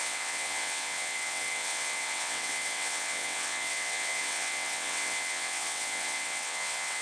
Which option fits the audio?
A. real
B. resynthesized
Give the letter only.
B